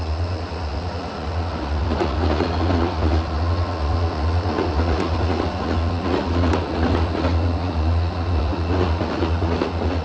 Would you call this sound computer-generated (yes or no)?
yes